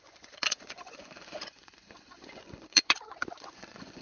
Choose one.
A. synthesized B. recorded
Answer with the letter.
A